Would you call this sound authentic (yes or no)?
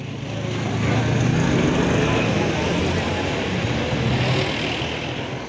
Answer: yes